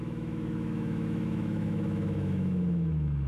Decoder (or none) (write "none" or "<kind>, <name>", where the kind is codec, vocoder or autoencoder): autoencoder, DAC-VAE